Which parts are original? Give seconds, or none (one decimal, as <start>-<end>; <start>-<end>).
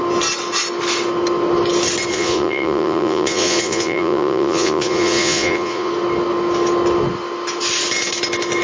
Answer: 0.0-2.1; 5.9-8.6